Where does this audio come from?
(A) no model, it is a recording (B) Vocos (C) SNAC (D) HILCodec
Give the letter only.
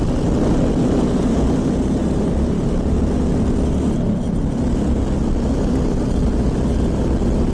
A